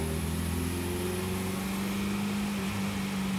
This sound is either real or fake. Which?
real